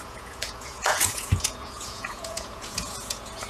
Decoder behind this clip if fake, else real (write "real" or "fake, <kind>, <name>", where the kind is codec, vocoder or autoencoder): fake, vocoder, Vocos